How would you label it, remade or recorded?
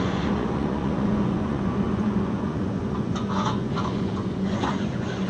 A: remade